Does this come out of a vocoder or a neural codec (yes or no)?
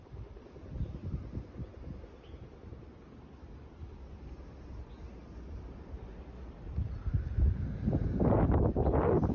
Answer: no